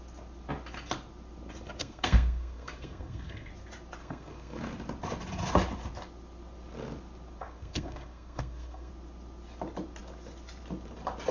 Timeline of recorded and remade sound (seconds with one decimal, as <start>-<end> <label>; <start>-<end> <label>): 0.0-1.8 recorded; 1.8-3.5 remade; 3.5-4.0 recorded; 4.0-4.6 remade; 4.6-7.4 recorded; 7.4-8.9 remade; 8.9-11.3 recorded